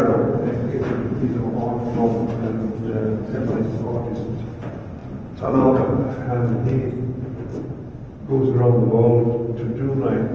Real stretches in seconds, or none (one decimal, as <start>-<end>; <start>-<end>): 0.0-2.2; 3.6-5.0; 6.1-10.3